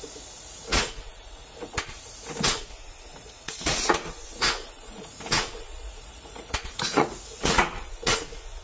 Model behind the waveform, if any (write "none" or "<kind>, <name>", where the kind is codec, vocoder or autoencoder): vocoder, Vocos